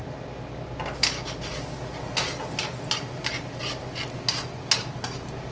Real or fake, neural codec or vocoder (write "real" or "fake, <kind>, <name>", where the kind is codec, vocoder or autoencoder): real